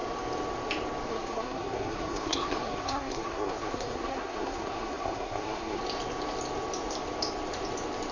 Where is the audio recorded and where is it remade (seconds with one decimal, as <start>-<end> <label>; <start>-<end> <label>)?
0.0-1.1 recorded; 1.1-5.8 remade; 5.8-8.1 recorded